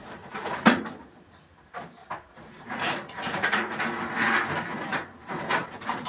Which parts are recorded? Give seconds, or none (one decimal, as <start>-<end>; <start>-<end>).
0.8-2.0; 3.8-6.1